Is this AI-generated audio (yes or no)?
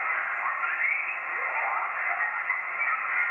no